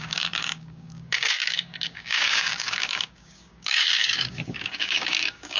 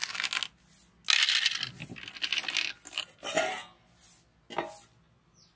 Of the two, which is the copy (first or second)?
first